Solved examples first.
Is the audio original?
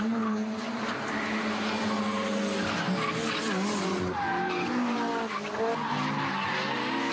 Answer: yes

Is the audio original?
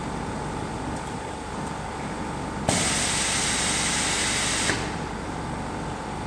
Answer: yes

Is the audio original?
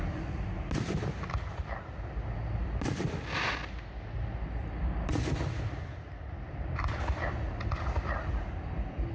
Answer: yes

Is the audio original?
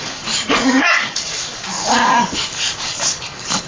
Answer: no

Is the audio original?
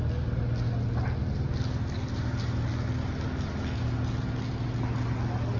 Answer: yes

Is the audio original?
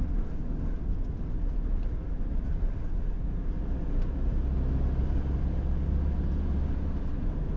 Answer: yes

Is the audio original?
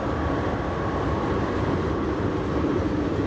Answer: yes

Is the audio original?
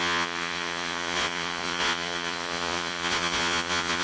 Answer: no